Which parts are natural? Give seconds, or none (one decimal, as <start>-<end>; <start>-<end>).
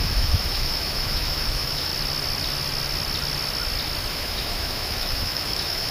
1.9-4.1